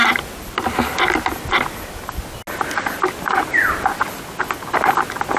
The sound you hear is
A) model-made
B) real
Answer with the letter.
B